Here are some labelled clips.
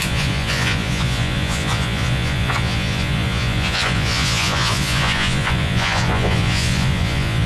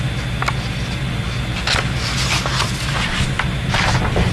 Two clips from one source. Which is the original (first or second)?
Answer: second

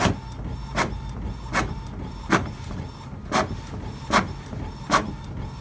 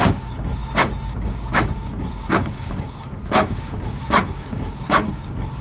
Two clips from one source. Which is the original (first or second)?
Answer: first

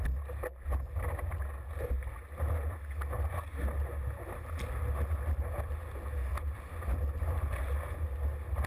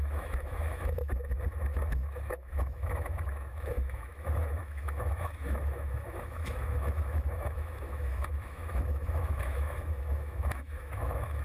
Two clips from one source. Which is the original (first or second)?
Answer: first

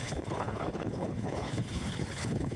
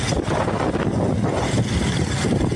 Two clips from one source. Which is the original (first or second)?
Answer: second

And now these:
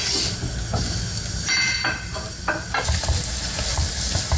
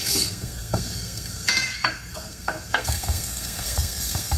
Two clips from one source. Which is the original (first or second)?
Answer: first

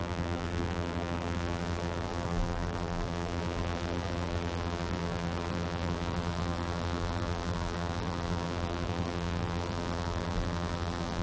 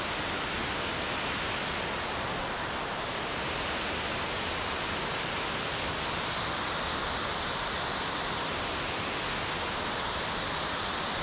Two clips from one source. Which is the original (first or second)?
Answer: second